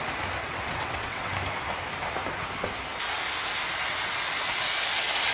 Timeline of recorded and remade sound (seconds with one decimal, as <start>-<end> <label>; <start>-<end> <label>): 0.0-0.4 recorded; 0.4-1.3 remade; 1.3-5.3 recorded